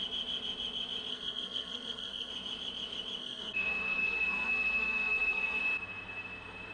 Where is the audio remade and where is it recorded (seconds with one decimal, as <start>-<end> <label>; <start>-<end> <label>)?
0.0-1.1 recorded; 1.1-2.3 remade; 2.3-3.2 recorded; 3.2-5.6 remade; 5.6-6.7 recorded